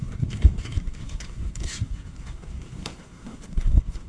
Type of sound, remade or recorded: remade